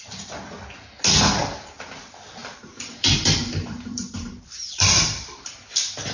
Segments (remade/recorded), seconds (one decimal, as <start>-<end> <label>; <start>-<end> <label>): 0.0-1.4 recorded; 1.4-2.0 remade; 2.0-2.4 recorded; 2.4-5.6 remade; 5.6-6.1 recorded